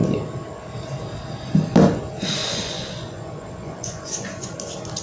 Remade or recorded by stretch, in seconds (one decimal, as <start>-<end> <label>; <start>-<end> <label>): 0.0-2.4 recorded; 2.4-4.5 remade; 4.5-5.0 recorded